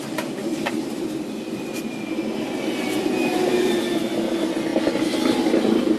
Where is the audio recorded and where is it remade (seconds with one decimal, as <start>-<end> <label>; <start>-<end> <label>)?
0.0-0.4 recorded; 0.4-4.0 remade; 4.0-6.0 recorded